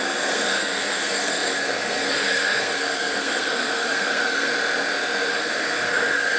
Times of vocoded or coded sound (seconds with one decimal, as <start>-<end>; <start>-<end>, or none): 0.0-4.5; 5.3-6.4